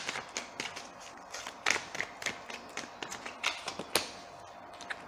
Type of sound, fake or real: real